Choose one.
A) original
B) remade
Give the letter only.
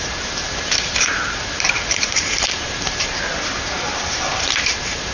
B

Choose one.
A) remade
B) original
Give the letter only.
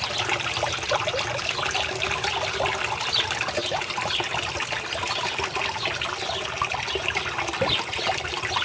B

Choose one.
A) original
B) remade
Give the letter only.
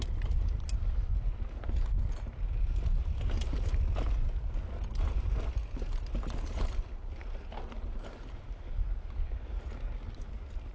A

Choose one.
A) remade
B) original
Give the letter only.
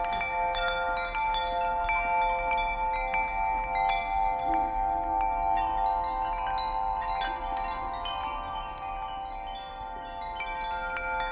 B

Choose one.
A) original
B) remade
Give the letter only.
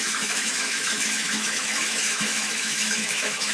B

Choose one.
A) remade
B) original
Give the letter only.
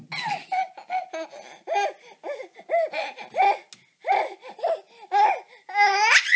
B